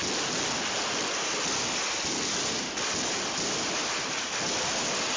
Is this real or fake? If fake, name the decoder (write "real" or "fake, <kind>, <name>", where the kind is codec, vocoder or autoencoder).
real